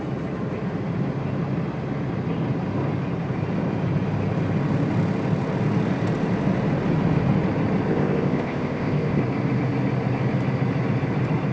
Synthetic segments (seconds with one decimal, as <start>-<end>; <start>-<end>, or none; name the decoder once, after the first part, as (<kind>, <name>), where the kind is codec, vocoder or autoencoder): 7.9-9.2 (codec, ZipCodec)